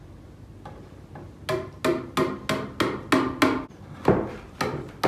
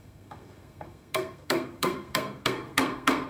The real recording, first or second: first